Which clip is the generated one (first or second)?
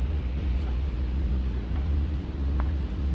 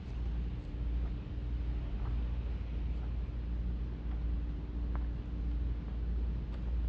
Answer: first